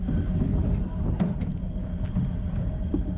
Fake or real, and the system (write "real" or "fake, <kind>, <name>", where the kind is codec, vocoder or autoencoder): real